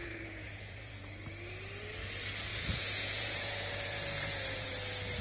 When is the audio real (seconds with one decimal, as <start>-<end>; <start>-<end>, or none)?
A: 1.0-2.5; 4.7-5.2

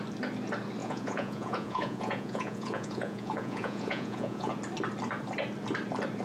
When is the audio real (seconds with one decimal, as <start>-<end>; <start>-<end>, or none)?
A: 0.0-0.8; 4.5-6.2

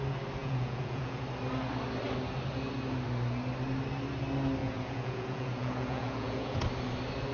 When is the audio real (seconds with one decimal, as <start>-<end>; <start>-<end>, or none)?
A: 0.0-0.4; 1.2-4.6; 6.6-7.3

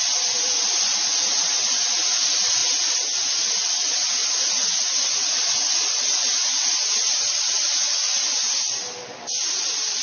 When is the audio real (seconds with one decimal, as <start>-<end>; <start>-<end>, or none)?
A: 0.0-4.2; 8.2-10.0

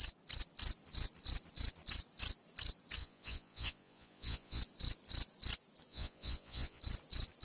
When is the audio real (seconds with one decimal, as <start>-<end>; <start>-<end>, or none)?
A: 0.0-3.0; 4.6-5.9; 6.8-7.4